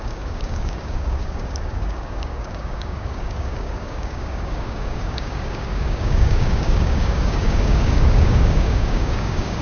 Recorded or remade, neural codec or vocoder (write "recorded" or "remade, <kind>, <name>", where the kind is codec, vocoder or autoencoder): remade, codec, DAC